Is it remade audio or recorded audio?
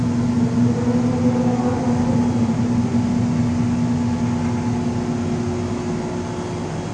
recorded